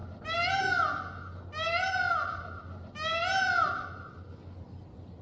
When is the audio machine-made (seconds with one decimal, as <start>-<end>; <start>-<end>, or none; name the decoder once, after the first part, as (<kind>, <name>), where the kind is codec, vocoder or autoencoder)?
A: none